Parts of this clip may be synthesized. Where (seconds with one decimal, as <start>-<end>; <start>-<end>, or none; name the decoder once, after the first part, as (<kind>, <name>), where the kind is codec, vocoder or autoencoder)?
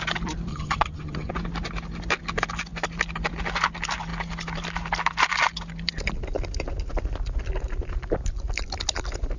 0.5-1.3 (vocoder, HiFi-GAN)